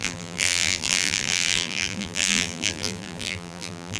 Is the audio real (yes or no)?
no